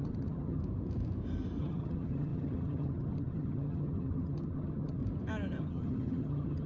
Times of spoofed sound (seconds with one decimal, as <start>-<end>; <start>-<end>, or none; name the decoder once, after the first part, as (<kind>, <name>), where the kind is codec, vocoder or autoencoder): 0.0-0.6 (vocoder, HiFi-GAN); 1.6-5.0; 5.6-6.7